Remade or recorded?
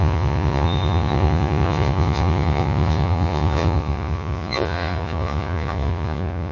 remade